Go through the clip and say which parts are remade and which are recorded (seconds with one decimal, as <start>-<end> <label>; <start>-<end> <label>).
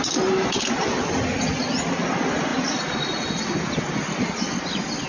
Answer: 0.0-5.1 recorded